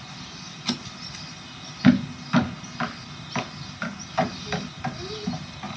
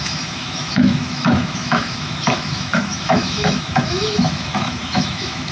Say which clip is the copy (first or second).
second